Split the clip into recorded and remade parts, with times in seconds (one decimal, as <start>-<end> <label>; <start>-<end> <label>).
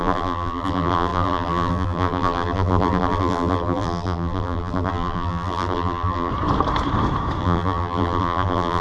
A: 0.0-6.3 remade; 6.3-7.4 recorded; 7.4-8.8 remade